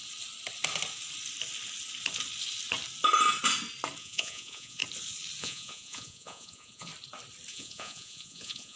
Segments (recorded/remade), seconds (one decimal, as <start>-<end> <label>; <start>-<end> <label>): 0.0-4.0 recorded; 4.0-4.8 remade; 4.8-5.4 recorded; 5.4-6.9 remade; 6.9-7.5 recorded; 7.5-8.8 remade